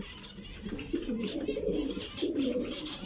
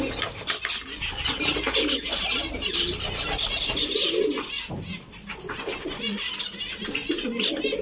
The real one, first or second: second